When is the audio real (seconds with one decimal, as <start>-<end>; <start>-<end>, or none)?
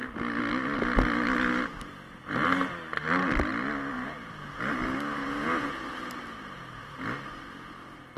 0.0-5.2; 5.8-8.2